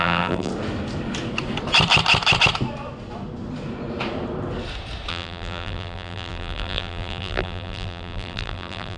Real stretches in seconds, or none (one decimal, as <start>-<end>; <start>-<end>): 0.5-5.1